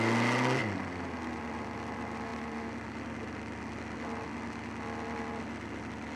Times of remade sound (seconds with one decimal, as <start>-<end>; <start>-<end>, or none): none